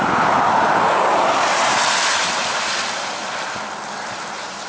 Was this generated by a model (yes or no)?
yes